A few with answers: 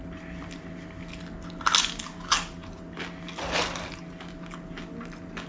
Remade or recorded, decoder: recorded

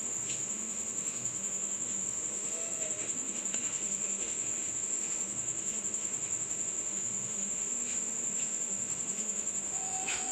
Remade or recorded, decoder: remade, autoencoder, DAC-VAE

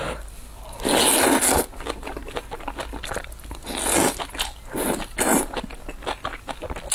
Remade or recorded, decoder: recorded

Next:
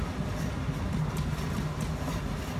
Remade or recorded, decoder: recorded